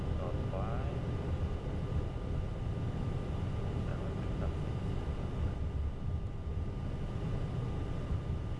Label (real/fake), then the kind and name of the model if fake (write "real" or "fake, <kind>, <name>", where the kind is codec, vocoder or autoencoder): real